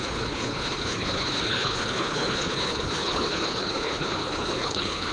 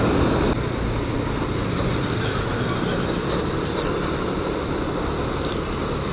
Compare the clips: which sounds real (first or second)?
second